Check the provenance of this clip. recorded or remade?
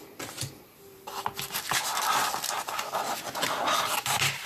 recorded